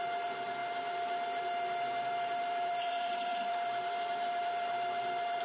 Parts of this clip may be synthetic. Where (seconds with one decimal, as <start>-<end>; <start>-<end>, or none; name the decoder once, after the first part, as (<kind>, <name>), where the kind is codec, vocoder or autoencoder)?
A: none